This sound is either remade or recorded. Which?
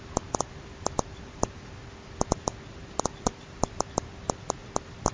recorded